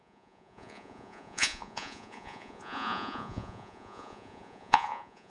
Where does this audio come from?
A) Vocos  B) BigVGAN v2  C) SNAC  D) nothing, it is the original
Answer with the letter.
A